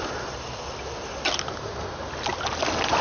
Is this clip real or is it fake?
real